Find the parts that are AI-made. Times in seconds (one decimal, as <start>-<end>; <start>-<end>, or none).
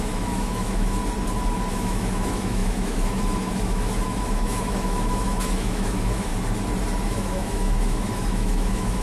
0.0-1.0; 1.7-6.3; 7.0-9.0